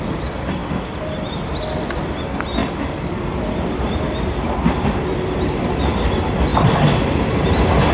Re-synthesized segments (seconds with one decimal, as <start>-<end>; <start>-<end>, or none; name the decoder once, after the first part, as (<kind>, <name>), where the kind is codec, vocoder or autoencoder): 2.6-5.8 (vocoder, BigVGAN v2)